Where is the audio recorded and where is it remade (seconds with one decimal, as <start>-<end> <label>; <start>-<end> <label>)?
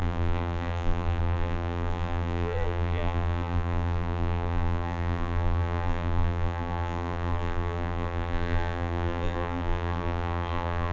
0.0-10.9 remade